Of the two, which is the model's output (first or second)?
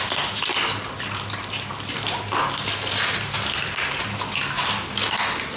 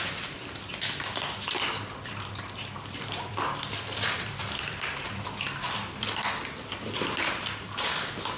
second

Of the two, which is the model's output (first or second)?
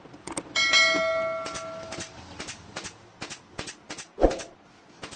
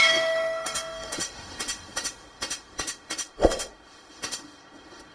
second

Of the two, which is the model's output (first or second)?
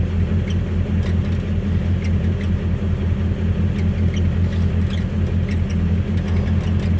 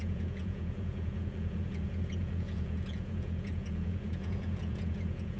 second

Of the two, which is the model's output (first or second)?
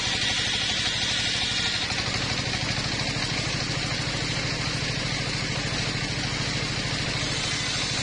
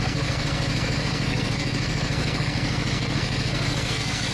second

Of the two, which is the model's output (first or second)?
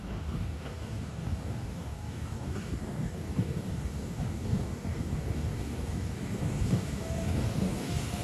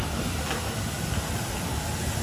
first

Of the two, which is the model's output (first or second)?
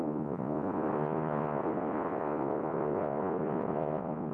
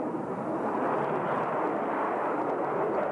first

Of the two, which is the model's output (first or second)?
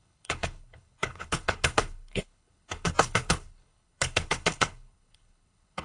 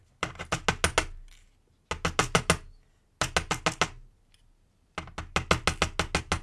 first